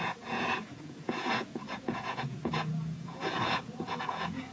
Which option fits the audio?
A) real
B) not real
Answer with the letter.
B